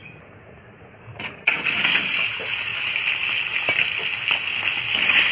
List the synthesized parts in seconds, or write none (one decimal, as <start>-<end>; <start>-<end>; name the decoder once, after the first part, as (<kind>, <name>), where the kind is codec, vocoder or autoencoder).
0.0-1.8 (vocoder, Vocos)